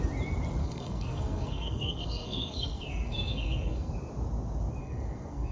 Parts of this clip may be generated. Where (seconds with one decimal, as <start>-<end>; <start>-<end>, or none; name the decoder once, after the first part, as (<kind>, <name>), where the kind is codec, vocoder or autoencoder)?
0.6-3.9 (codec, SNAC); 4.8-5.5